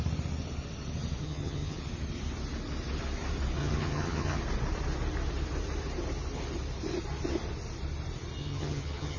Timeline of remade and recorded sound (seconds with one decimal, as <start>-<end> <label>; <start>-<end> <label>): 0.0-1.2 recorded; 1.2-1.8 remade; 1.8-3.6 recorded; 3.6-4.4 remade; 4.4-8.4 recorded; 8.4-9.2 remade